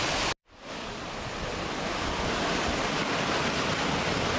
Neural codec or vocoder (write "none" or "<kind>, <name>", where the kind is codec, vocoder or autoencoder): none